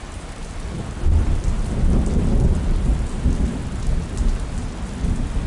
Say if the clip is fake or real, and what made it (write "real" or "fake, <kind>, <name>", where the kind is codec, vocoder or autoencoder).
real